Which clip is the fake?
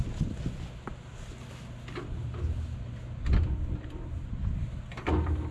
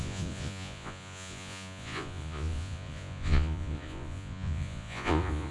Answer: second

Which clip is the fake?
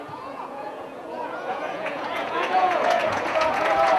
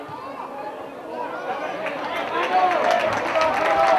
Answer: first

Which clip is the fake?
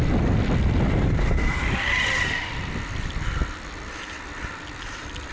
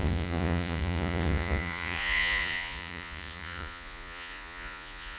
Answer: second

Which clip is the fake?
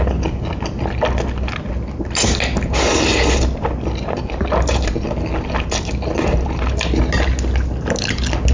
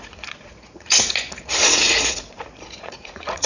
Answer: second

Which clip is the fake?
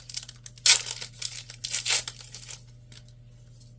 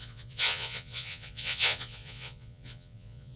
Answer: second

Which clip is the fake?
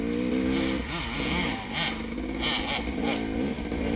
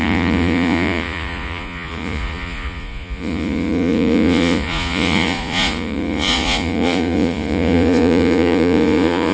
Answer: second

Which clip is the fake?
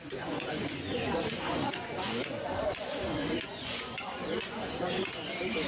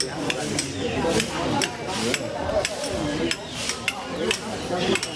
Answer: first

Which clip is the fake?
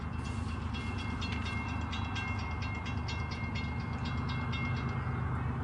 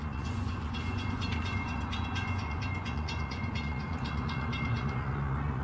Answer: second